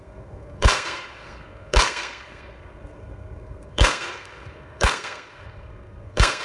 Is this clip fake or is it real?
fake